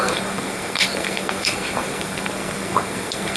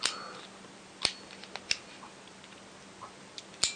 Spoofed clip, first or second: first